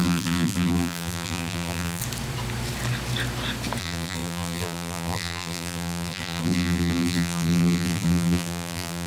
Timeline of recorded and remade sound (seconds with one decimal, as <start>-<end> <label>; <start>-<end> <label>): 0.0-2.0 remade; 2.0-3.8 recorded; 3.8-9.1 remade